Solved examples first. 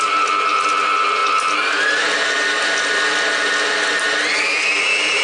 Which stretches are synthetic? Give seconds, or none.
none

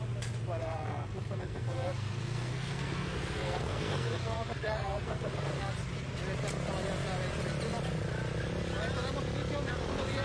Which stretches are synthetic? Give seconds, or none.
0.6-5.7 (codec, SNAC)

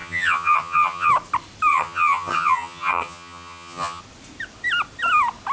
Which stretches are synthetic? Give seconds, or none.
0.0-1.1 (vocoder, HiFi-GAN); 1.7-4.0

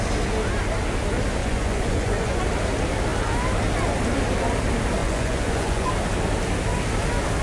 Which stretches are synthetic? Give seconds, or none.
1.4-2.4 (vocoder, Vocos); 5.0-5.9

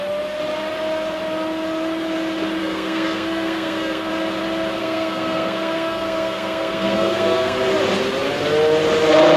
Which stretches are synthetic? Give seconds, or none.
2.6-4.1 (codec, SNAC); 4.8-7.6